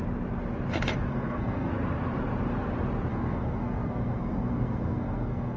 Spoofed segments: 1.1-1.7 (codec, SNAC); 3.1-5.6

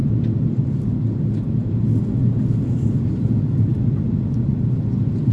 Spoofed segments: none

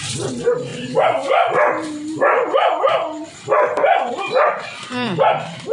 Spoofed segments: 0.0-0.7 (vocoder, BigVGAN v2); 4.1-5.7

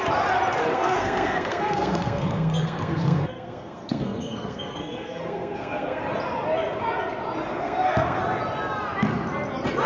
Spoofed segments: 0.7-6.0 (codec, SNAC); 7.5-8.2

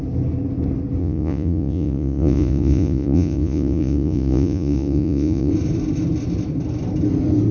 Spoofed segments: 1.0-5.5 (vocoder, Vocos)